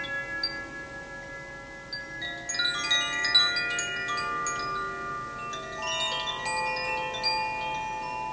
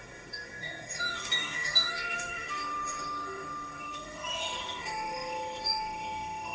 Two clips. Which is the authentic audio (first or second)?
first